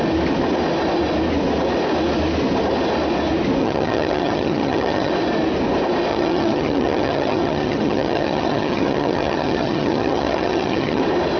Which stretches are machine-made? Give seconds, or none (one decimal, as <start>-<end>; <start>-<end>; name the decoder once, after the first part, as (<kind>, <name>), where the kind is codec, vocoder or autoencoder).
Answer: 3.6-5.1 (vocoder, HiFi-GAN); 6.1-11.0